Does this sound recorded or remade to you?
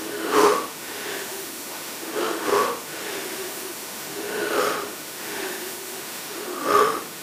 remade